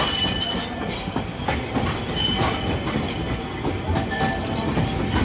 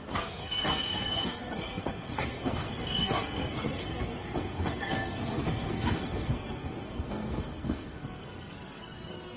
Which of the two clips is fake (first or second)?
second